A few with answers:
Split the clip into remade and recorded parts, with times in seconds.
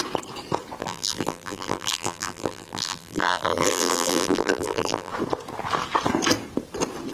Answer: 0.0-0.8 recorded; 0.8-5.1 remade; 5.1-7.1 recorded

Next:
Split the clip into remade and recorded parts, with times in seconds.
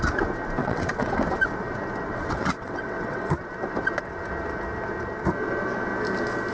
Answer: 0.0-0.6 recorded; 0.6-1.2 remade; 1.2-2.1 recorded; 2.1-3.3 remade; 3.3-6.5 recorded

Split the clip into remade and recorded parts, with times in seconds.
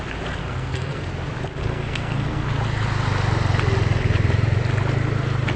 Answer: 0.0-0.4 recorded; 0.4-1.1 remade; 1.1-1.6 recorded; 1.6-2.5 remade; 2.5-5.6 recorded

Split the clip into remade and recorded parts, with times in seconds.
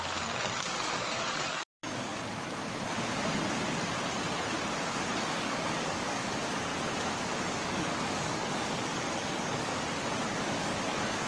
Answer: 0.0-2.1 remade; 2.1-5.2 recorded; 5.2-6.7 remade; 6.7-7.4 recorded; 7.4-9.7 remade; 9.7-10.4 recorded; 10.4-11.3 remade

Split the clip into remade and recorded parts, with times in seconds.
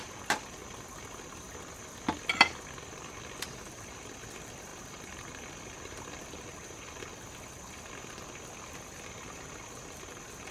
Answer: 0.0-10.5 recorded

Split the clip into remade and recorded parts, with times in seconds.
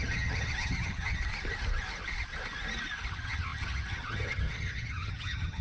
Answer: 0.0-1.2 remade; 1.2-3.1 recorded; 3.1-5.6 remade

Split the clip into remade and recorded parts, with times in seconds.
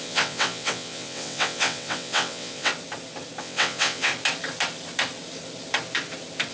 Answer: 0.0-2.7 remade; 2.7-3.4 recorded; 3.4-4.1 remade; 4.1-6.5 recorded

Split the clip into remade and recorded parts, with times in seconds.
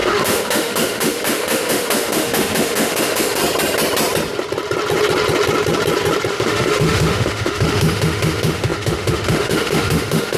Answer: 0.0-3.4 remade; 3.4-6.3 recorded; 6.3-10.4 remade